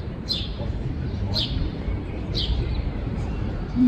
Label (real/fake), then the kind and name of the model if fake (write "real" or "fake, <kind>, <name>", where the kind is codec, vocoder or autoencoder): fake, vocoder, BigVGAN v2